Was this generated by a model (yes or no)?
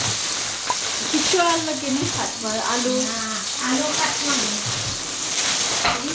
no